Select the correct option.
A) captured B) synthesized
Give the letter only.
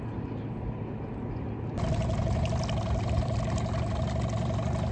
A